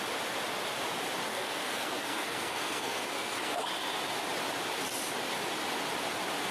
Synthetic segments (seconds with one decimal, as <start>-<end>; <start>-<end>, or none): 1.3-3.7